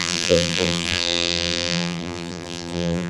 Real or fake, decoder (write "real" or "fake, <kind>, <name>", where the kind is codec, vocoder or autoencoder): fake, vocoder, BigVGAN v2